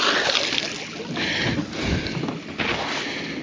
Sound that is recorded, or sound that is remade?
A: recorded